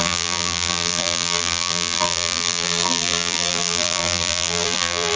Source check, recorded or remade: remade